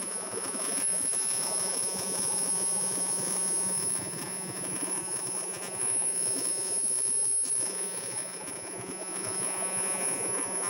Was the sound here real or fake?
fake